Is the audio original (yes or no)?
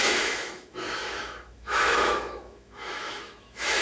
no